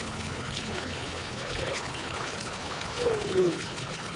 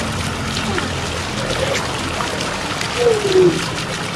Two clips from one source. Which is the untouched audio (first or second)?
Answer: second